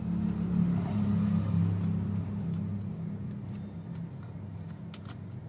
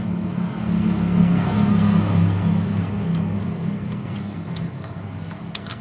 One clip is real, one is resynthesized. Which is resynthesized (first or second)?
second